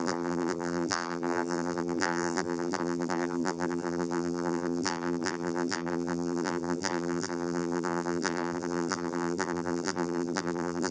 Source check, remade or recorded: remade